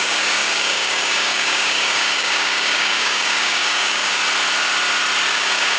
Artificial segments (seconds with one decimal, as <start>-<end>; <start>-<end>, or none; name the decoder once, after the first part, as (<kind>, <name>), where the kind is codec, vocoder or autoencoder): 0.0-4.2 (codec, DAC); 5.3-5.8